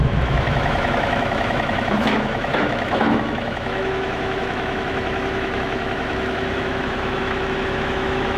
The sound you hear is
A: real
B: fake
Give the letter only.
B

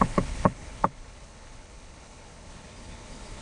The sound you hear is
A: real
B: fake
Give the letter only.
B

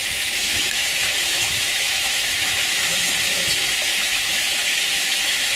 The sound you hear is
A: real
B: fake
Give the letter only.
B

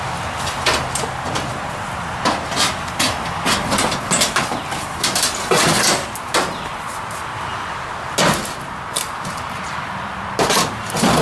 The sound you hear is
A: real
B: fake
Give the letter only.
A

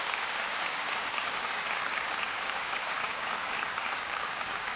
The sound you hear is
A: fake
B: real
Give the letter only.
A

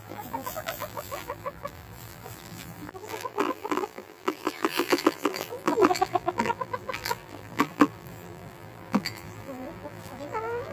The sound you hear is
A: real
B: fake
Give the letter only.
B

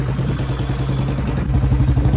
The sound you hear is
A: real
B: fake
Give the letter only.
A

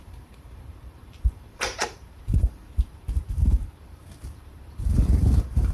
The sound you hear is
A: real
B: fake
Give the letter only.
B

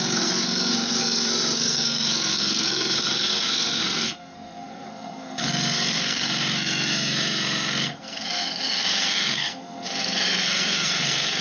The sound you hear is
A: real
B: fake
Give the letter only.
B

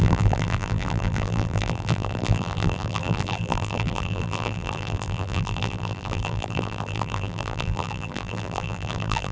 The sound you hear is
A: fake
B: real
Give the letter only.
A